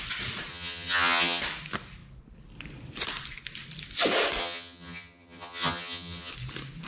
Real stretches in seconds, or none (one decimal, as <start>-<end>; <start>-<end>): 0.0-0.5; 1.4-4.4; 6.3-6.9